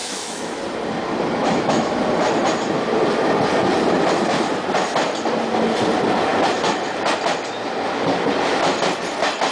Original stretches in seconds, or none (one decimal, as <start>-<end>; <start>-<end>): 0.6-1.4; 2.0-9.5